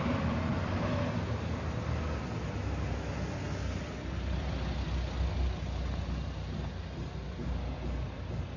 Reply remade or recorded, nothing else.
recorded